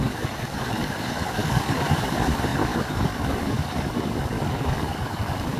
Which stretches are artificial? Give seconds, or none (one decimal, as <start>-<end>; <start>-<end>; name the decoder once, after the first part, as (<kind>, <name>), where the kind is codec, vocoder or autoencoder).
0.0-5.6 (codec, DAC)